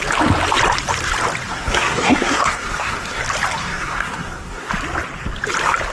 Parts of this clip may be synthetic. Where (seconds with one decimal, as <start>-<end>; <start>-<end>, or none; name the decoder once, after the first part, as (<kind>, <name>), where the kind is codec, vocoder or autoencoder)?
1.5-3.2 (codec, SNAC); 3.6-4.7